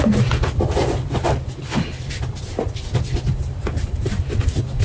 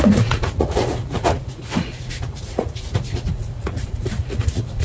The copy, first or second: second